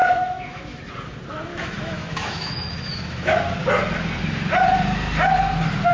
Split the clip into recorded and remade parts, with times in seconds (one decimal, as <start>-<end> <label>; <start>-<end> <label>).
0.0-0.9 remade; 0.9-1.5 recorded; 1.5-3.4 remade; 3.4-5.9 recorded